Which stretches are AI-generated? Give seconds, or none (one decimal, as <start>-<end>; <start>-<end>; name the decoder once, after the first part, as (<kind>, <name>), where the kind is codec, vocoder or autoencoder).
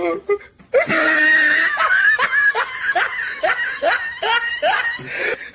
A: none